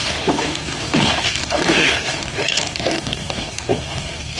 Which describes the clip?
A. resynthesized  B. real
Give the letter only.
A